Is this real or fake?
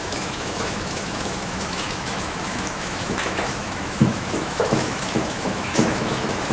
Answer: fake